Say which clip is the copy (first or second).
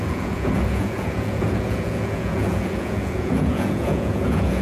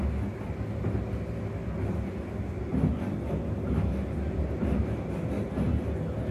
first